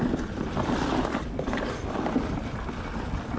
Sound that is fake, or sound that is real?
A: real